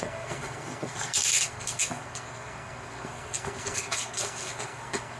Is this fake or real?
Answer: fake